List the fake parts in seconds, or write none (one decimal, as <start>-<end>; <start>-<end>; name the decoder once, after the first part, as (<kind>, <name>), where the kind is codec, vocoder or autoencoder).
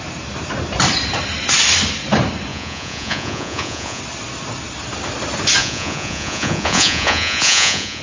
2.5-4.0 (vocoder, Vocos); 5.6-8.0